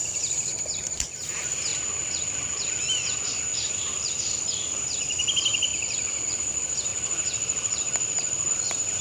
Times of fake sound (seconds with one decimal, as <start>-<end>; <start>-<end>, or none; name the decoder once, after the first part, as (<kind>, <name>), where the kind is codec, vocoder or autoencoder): 0.0-1.7 (vocoder, BigVGAN v2); 3.7-5.7; 6.3-6.9; 8.5-9.0